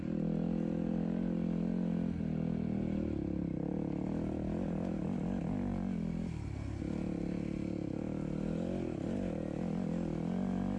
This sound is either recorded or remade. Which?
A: recorded